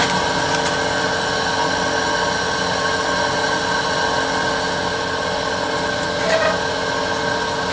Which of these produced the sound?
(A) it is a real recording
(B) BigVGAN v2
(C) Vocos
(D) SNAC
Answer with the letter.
A